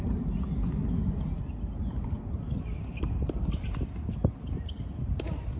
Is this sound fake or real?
real